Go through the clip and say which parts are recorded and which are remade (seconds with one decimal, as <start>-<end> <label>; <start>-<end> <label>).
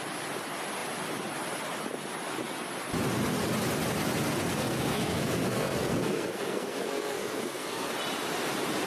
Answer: 0.0-4.5 recorded; 4.5-7.9 remade; 7.9-8.9 recorded